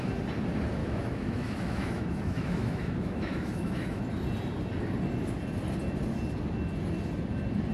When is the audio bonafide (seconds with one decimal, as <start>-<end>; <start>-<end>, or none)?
0.0-0.8; 4.0-7.7